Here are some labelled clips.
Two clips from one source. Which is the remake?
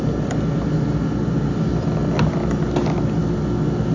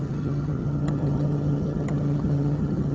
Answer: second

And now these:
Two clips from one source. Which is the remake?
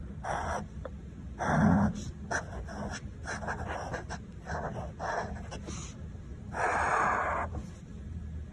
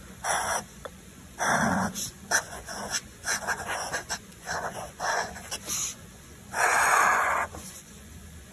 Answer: second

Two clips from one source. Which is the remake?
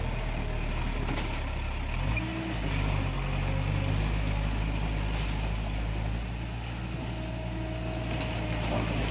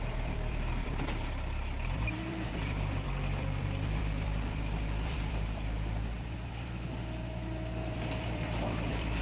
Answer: second